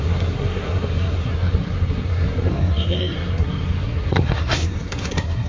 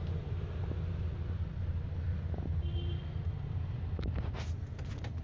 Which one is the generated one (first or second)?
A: first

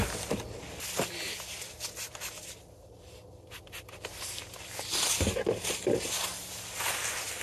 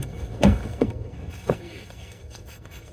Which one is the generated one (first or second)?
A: second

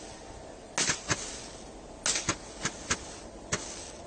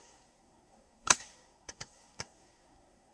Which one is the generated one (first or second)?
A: second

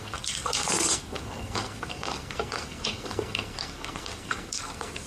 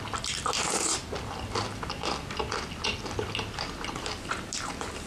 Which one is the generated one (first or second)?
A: first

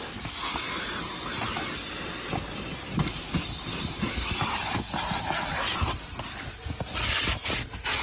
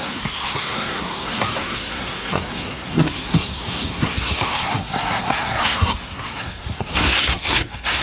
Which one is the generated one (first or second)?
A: second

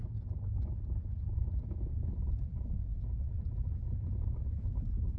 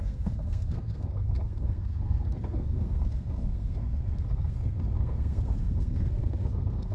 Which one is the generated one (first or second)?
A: second